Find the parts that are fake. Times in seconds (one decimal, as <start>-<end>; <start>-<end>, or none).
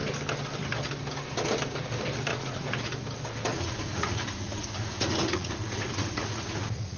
2.3-3.0; 3.5-7.0